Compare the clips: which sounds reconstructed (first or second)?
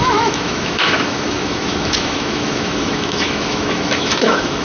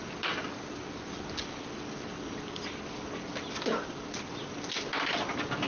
first